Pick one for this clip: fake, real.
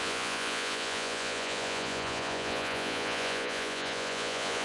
fake